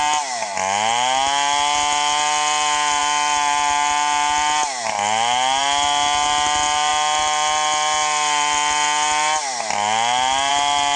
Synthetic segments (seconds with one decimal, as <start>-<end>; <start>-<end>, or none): none